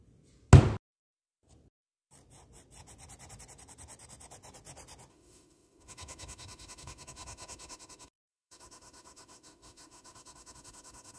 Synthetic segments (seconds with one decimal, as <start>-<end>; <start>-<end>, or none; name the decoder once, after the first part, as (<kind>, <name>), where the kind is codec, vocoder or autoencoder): 5.1-11.2 (autoencoder, DAC-VAE)